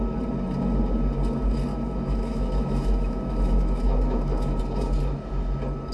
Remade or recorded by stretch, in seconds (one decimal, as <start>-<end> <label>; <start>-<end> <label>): 0.0-1.7 recorded; 1.7-4.6 remade; 4.6-5.9 recorded